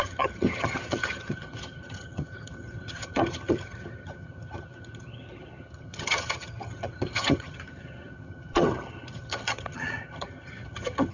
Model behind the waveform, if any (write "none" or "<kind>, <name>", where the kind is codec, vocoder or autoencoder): vocoder, HiFi-GAN